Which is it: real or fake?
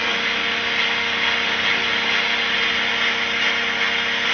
real